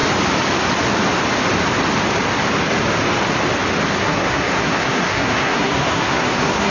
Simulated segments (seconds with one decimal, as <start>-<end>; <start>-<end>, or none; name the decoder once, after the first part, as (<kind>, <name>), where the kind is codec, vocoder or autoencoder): 4.0-6.7 (codec, SNAC)